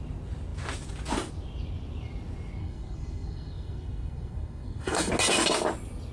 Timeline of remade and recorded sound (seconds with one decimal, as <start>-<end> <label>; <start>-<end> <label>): 0.0-2.6 recorded; 2.6-5.1 remade; 5.1-6.1 recorded